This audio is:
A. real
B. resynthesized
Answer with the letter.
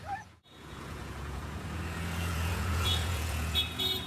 B